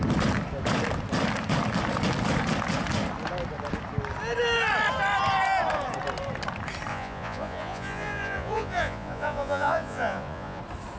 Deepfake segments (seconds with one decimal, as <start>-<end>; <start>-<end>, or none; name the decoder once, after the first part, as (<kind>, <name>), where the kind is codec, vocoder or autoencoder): 6.9-10.6 (vocoder, Vocos)